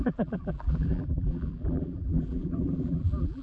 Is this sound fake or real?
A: fake